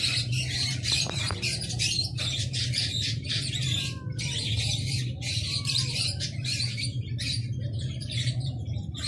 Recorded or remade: remade